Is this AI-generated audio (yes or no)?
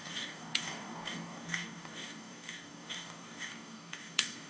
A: yes